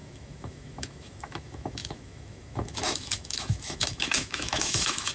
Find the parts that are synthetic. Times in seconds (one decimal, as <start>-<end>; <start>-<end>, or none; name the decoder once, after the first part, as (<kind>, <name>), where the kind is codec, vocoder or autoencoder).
0.0-5.1 (autoencoder, DAC-VAE)